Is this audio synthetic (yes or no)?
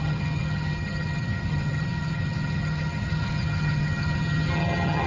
yes